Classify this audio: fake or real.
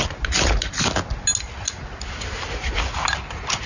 real